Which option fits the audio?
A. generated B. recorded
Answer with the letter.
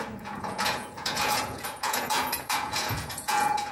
A